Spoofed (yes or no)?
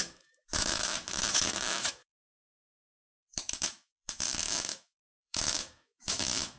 yes